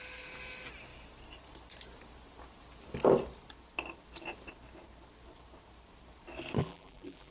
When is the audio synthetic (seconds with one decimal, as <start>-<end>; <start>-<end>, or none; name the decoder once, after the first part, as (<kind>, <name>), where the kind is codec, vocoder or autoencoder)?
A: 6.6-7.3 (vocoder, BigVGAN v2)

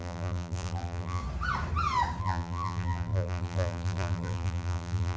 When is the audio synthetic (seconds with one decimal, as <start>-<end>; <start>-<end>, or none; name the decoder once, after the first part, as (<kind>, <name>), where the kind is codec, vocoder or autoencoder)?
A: 0.0-1.2 (vocoder, BigVGAN v2); 2.2-5.2

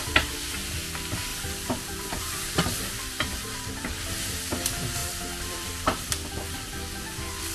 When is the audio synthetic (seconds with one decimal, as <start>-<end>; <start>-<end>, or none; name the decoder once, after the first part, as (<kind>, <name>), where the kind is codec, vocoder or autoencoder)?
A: 1.3-4.0 (vocoder, BigVGAN v2); 5.0-6.7

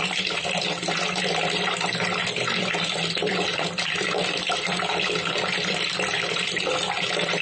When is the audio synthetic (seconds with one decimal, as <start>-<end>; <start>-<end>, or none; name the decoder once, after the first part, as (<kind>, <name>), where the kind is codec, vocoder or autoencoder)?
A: 3.3-6.3 (vocoder, BigVGAN v2)

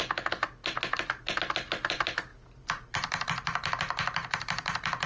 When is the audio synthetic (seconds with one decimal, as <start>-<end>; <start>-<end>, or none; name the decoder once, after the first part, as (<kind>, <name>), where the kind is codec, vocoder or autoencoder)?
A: 2.3-5.1 (vocoder, BigVGAN v2)

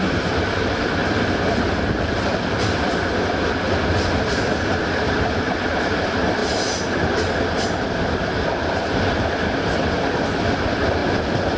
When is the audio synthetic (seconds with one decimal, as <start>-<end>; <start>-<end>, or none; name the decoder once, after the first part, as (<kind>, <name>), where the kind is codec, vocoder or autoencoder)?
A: 0.0-6.4 (vocoder, BigVGAN v2); 7.6-11.0

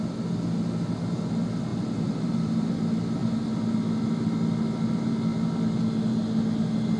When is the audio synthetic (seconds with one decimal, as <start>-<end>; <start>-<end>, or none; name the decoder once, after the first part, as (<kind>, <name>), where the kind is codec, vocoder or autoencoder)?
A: 1.7-2.7 (vocoder, BigVGAN v2)